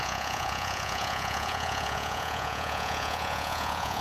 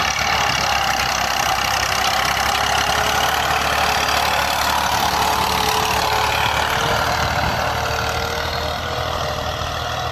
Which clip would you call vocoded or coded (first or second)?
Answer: first